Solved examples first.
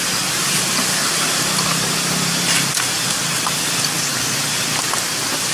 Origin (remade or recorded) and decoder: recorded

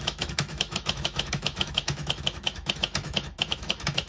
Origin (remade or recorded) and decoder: remade, autoencoder, DAC-VAE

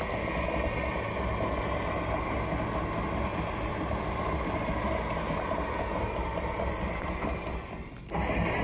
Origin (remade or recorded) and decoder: recorded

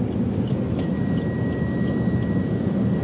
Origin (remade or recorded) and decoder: recorded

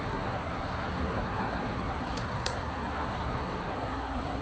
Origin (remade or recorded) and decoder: remade, codec, SNAC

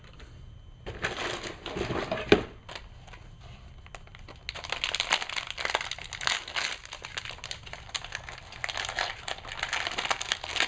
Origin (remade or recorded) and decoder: recorded